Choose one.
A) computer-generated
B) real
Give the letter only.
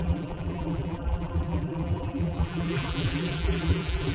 A